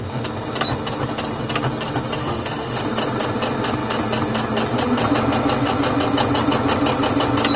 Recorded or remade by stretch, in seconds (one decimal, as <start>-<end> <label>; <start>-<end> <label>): 0.0-2.2 recorded; 2.2-2.8 remade; 2.8-7.6 recorded